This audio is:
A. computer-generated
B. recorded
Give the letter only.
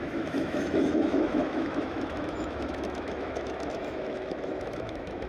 A